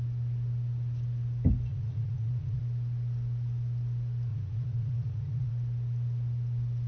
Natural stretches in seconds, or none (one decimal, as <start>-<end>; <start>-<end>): 0.0-1.7; 2.6-4.3; 5.5-6.9